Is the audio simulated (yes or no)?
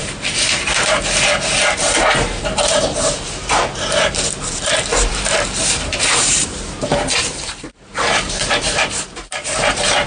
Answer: yes